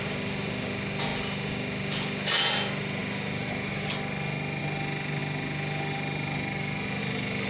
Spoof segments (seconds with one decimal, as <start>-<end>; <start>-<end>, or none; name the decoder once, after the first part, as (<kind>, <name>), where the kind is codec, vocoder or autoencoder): none